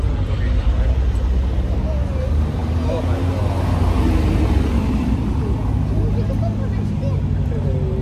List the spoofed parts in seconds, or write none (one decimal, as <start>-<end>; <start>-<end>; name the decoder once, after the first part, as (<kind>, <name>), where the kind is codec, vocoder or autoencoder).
none